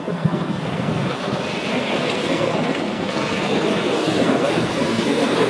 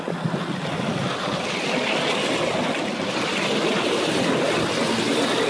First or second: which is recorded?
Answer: second